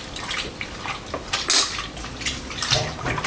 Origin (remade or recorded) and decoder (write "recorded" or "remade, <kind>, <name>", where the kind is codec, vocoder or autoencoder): recorded